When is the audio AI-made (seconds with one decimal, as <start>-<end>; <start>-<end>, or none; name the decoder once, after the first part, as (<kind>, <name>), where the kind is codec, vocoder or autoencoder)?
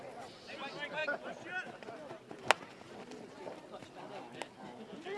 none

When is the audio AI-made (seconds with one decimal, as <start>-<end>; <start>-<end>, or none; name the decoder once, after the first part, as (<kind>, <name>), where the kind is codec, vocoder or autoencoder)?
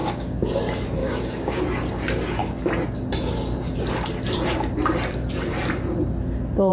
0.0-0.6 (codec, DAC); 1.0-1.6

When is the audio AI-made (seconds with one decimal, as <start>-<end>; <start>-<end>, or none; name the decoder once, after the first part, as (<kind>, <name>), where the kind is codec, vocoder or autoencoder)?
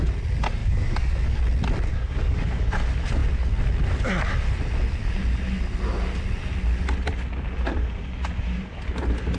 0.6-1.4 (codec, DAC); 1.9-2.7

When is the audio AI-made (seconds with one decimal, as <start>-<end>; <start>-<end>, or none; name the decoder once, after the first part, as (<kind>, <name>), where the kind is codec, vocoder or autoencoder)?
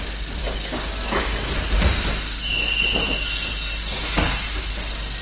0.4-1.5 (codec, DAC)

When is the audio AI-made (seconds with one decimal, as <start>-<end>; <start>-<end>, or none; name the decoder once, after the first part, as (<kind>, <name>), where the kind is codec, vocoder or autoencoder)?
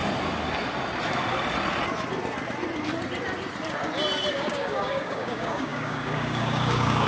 4.3-7.1 (codec, DAC)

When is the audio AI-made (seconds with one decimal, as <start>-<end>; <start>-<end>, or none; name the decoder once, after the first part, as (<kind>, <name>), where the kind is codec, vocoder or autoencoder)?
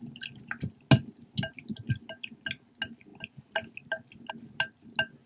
none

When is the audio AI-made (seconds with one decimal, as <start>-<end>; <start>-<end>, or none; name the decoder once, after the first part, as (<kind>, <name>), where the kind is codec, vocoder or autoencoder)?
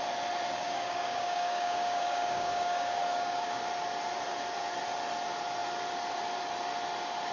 0.6-3.6 (codec, DAC)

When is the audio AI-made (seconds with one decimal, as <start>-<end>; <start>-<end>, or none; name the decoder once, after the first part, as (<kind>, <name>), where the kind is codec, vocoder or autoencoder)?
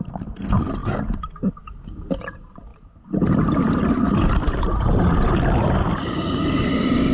none